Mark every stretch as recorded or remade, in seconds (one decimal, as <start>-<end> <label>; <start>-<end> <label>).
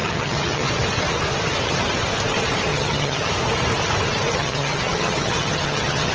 0.0-0.7 remade; 0.7-2.7 recorded; 2.7-3.3 remade; 3.3-4.3 recorded; 4.3-6.1 remade